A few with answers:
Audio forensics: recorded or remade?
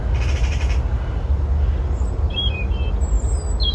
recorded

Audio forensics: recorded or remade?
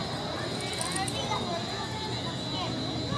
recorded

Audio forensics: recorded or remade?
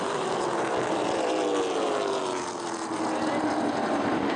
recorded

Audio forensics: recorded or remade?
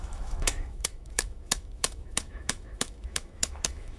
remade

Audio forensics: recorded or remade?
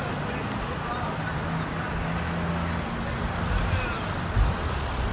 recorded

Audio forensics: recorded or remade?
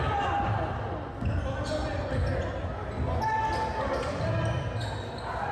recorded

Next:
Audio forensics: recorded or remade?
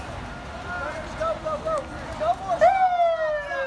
recorded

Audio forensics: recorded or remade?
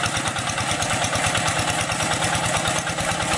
recorded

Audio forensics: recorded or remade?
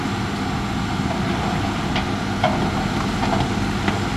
recorded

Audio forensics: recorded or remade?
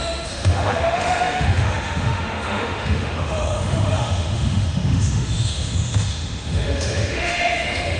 remade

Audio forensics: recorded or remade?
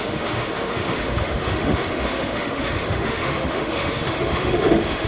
remade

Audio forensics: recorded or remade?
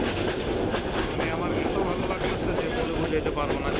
recorded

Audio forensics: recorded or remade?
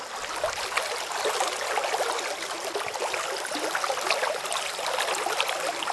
recorded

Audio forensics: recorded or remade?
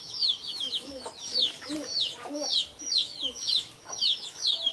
remade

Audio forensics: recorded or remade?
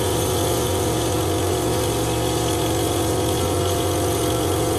recorded